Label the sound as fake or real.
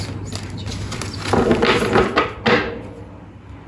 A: real